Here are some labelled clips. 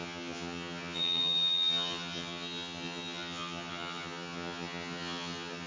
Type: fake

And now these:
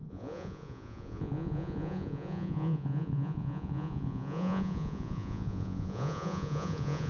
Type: fake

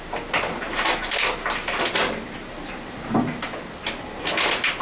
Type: real